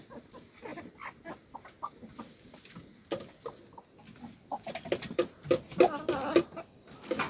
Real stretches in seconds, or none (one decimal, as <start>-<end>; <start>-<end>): 0.0-7.3